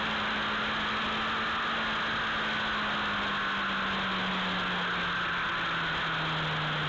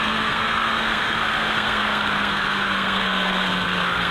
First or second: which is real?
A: first